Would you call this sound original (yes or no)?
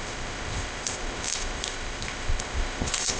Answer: no